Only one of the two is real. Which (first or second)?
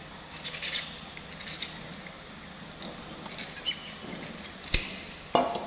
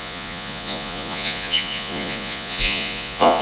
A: first